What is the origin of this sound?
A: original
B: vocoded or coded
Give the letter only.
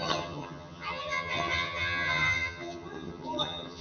B